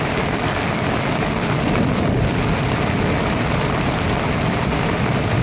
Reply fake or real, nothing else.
real